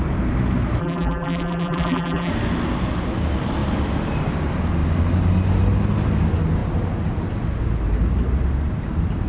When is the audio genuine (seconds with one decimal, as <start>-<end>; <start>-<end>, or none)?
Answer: 0.0-0.8; 2.3-9.3